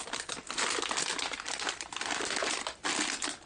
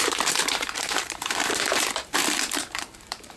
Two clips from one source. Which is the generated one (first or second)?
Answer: second